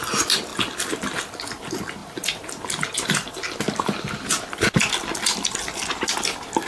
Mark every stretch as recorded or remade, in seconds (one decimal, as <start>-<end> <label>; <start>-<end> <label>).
0.0-6.7 recorded